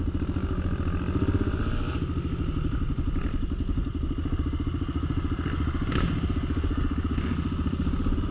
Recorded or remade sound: recorded